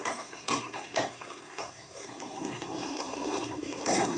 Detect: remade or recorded remade